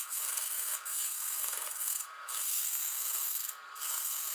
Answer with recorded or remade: remade